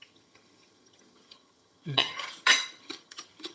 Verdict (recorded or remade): remade